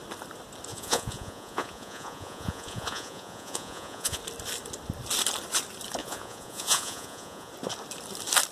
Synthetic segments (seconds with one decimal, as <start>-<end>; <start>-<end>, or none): 0.7-4.2; 6.0-7.5

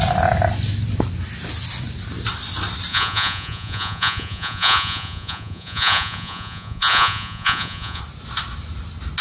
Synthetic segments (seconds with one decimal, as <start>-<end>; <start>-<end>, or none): 2.9-8.0

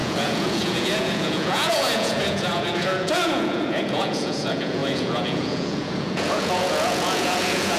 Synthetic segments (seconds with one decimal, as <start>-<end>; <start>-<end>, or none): 0.0-7.8

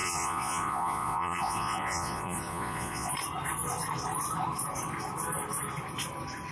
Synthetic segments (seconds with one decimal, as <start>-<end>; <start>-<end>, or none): 0.0-3.1

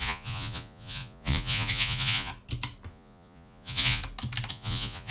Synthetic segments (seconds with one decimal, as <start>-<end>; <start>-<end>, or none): 0.0-2.3; 2.9-4.0; 4.5-5.1

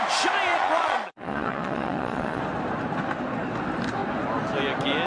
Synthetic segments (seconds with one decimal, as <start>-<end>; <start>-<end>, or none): 0.5-2.4

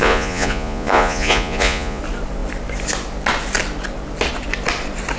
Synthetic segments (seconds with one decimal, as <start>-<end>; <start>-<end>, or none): 0.0-2.0

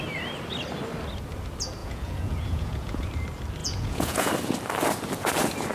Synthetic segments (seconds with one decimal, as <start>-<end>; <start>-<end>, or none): 1.8-3.1; 3.6-4.3